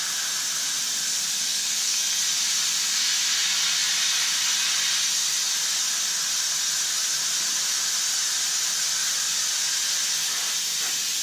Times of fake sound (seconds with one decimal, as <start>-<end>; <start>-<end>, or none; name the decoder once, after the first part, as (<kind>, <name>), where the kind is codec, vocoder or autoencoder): 1.5-2.2 (codec, SNAC)